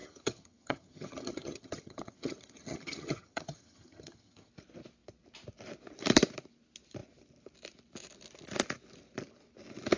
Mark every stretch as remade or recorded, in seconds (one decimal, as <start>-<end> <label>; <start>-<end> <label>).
0.0-4.5 remade; 4.5-10.0 recorded

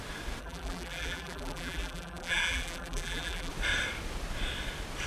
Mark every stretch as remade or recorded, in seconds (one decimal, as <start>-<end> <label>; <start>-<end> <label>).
0.0-0.4 recorded; 0.4-3.5 remade; 3.5-5.1 recorded

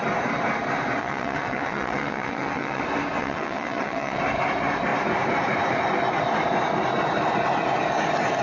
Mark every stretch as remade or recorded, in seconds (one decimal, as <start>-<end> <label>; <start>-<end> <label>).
0.0-1.0 recorded; 1.0-2.8 remade; 2.8-3.2 recorded; 3.2-4.2 remade; 4.2-8.4 recorded

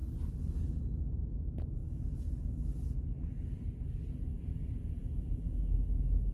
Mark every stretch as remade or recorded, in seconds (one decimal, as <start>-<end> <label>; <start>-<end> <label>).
0.0-1.8 recorded; 1.8-2.7 remade; 2.7-6.3 recorded

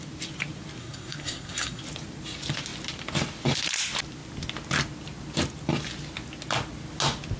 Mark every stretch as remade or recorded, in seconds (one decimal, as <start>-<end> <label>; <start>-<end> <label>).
0.0-0.8 recorded; 0.8-1.8 remade; 1.8-7.4 recorded